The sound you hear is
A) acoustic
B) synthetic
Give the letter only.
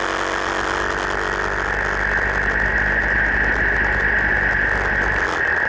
A